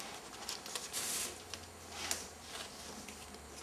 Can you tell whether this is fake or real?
real